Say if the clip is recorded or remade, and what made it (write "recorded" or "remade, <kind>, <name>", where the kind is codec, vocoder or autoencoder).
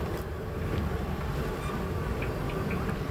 recorded